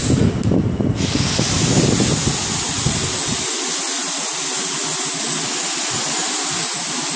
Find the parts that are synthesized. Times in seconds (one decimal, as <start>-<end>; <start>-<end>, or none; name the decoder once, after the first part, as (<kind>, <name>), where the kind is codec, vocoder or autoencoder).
none